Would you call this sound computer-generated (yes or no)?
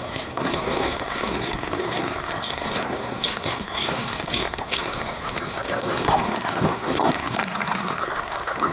yes